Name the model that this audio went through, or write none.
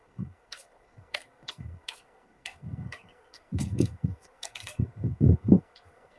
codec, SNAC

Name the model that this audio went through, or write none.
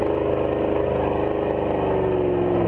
none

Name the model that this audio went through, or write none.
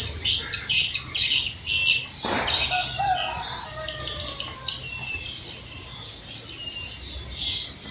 none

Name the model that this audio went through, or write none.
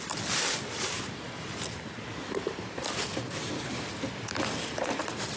none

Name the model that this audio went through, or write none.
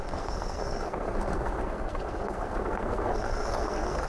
codec, SNAC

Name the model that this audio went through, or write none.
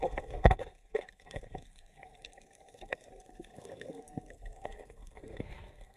codec, SNAC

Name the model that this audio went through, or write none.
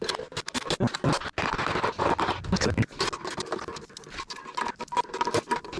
none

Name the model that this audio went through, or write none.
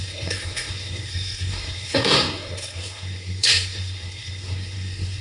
codec, SNAC